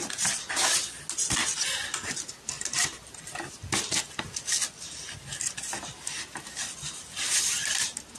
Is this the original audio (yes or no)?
yes